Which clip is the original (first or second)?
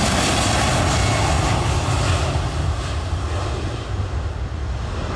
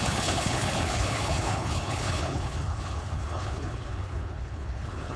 first